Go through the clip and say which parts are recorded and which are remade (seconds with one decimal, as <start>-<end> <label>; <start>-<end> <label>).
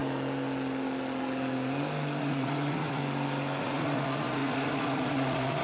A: 0.0-2.2 recorded; 2.2-3.0 remade; 3.0-3.6 recorded; 3.6-5.6 remade